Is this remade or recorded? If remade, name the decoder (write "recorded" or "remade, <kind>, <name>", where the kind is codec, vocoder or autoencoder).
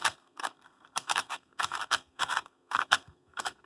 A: remade, codec, SNAC